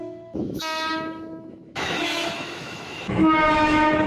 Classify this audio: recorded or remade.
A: remade